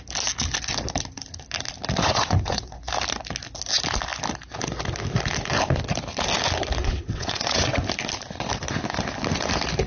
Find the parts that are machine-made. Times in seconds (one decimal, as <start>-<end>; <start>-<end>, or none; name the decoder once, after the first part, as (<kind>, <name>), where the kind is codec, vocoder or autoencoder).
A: 2.0-2.8 (vocoder, WaveNeXt); 6.8-7.8